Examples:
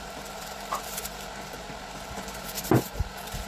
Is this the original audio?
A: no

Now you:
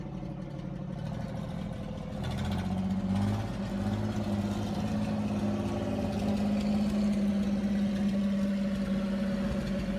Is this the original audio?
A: yes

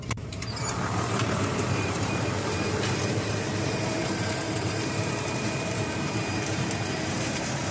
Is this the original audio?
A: no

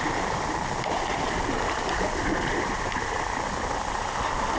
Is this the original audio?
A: yes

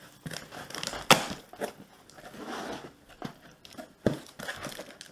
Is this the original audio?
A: yes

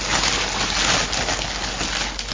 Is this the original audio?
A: yes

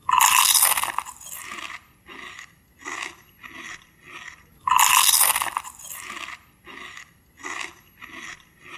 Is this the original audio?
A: yes